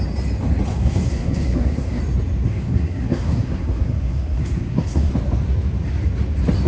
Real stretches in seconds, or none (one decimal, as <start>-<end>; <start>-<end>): 0.0-0.7; 2.0-2.5; 5.1-6.7